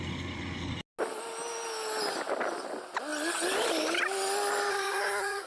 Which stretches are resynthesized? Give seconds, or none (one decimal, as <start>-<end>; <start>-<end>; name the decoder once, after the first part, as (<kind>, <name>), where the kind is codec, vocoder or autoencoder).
4.7-5.5 (codec, SNAC)